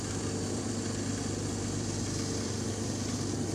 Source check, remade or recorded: remade